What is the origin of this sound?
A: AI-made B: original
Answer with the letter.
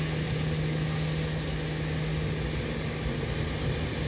B